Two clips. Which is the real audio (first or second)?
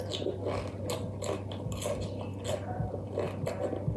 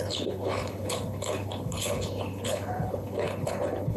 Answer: first